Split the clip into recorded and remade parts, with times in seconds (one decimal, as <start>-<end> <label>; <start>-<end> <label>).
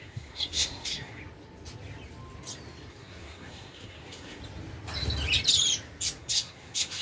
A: 0.0-1.2 remade; 1.2-2.9 recorded; 2.9-4.4 remade; 4.4-6.2 recorded; 6.2-7.0 remade